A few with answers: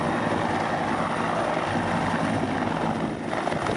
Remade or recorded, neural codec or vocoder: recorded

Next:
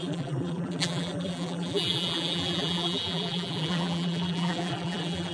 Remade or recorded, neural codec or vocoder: remade, vocoder, BigVGAN v2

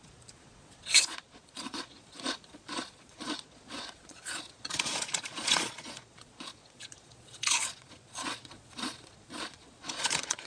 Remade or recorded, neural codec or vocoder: remade, vocoder, Vocos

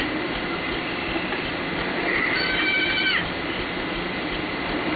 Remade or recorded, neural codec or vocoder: recorded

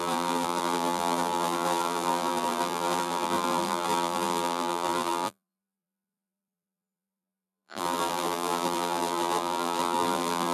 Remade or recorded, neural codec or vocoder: remade, vocoder, BigVGAN v2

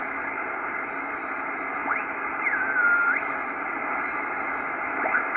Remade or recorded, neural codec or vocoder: recorded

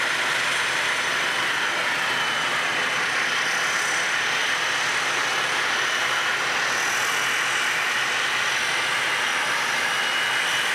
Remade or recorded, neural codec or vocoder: recorded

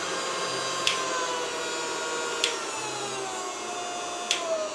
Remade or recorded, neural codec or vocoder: recorded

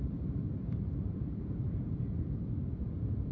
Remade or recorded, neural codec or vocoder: remade, vocoder, BigVGAN v2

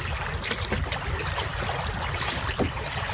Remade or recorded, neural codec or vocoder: recorded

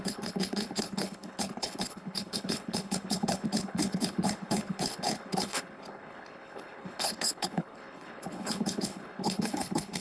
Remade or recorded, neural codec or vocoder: remade, codec, HILCodec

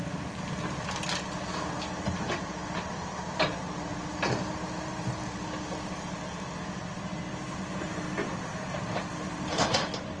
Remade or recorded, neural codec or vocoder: recorded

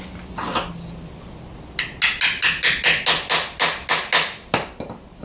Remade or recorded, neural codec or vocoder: recorded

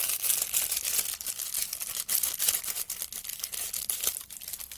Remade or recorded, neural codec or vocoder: recorded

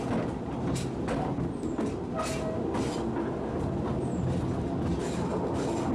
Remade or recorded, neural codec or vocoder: recorded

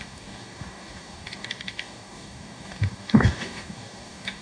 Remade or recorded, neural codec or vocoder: remade, codec, DAC